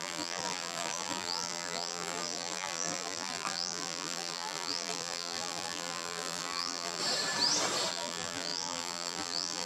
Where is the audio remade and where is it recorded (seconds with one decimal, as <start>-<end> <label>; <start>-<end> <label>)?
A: 0.0-7.0 remade; 7.0-7.9 recorded; 7.9-9.7 remade